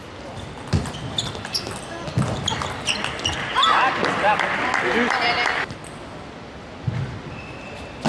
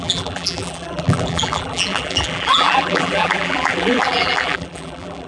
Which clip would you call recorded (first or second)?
first